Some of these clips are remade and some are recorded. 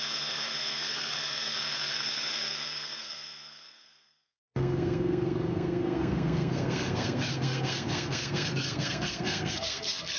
remade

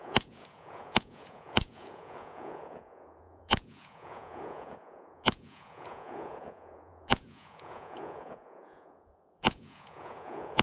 remade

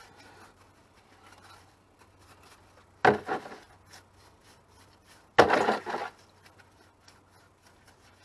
recorded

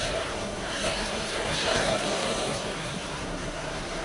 remade